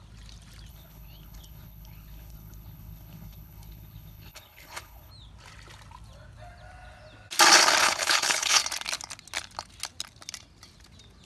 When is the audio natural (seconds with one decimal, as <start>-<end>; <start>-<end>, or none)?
0.0-0.7; 5.1-7.8; 8.6-11.3